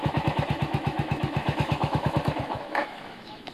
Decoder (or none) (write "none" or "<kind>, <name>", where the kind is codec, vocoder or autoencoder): autoencoder, DAC-VAE